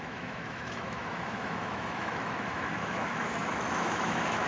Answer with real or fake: fake